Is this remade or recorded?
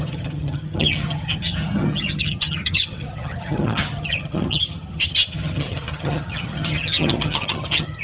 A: remade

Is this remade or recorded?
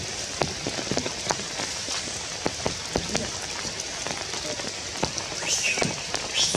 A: recorded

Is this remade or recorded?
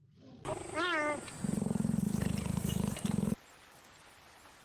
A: recorded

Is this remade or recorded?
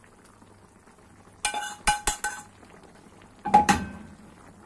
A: recorded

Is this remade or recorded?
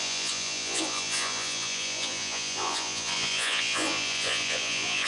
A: remade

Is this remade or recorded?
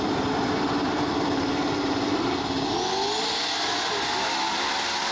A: recorded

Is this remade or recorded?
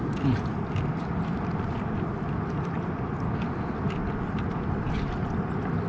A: recorded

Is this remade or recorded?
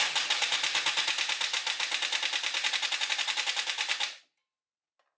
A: recorded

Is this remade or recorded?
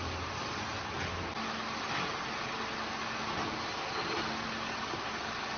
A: recorded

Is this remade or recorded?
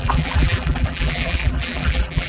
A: remade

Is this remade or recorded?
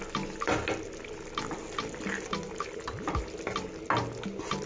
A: recorded